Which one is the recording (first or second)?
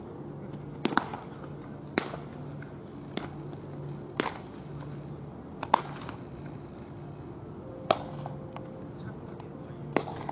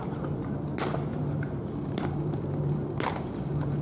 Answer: first